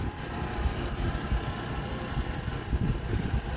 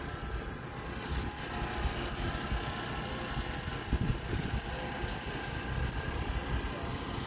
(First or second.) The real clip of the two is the second